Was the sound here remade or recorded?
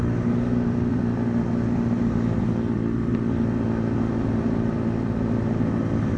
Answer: recorded